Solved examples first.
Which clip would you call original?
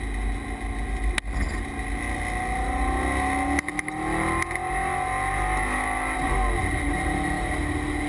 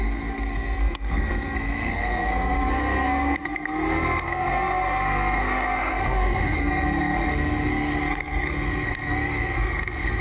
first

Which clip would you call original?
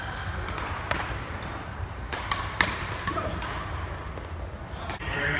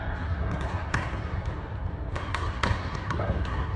first